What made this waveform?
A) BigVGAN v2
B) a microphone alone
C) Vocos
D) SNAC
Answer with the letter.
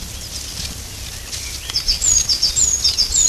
B